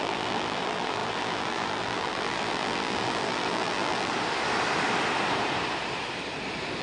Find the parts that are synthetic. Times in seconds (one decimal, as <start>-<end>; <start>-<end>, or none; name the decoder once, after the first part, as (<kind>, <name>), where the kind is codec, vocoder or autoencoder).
0.0-4.1 (vocoder, BigVGAN v2)